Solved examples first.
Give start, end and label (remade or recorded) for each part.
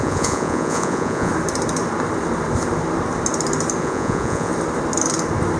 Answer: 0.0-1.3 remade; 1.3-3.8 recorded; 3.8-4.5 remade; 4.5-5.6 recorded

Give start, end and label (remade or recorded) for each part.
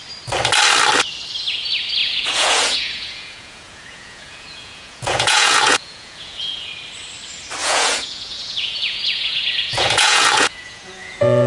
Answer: 0.0-2.0 recorded; 2.0-6.7 remade; 6.7-7.6 recorded; 7.6-11.5 remade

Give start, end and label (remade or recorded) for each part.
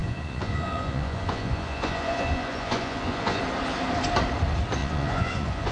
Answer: 0.0-3.4 remade; 3.4-4.8 recorded; 4.8-5.7 remade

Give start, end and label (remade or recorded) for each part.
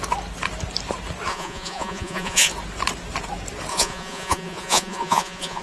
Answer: 0.0-1.3 recorded; 1.3-2.5 remade; 2.5-3.7 recorded; 3.7-5.6 remade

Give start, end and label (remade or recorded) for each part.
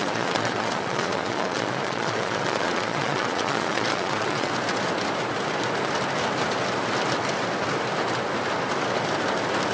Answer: 0.0-4.5 remade; 4.5-9.7 recorded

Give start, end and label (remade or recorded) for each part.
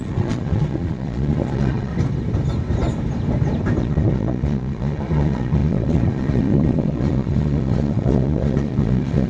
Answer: 0.0-1.9 remade; 1.9-3.8 recorded; 3.8-9.3 remade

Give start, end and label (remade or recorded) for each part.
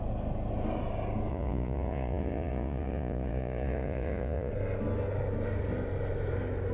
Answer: 0.0-1.3 recorded; 1.3-4.5 remade; 4.5-6.7 recorded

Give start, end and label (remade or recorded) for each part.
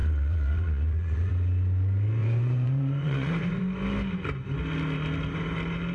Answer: 0.0-1.3 remade; 1.3-2.2 recorded; 2.2-3.6 remade; 3.6-5.9 recorded